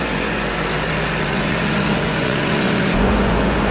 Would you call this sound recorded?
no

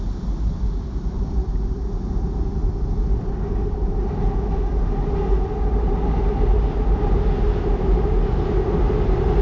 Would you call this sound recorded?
yes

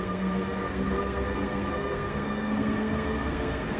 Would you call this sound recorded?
no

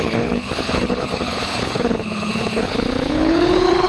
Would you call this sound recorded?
no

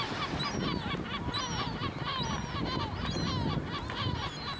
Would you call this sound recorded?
yes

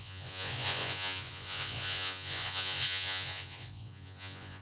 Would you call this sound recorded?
no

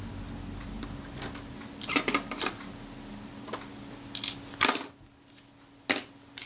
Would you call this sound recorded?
yes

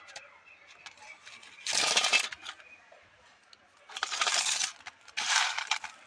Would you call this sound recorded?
yes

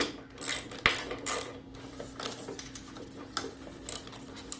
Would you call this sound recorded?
yes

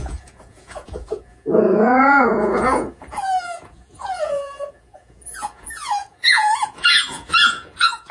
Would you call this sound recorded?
no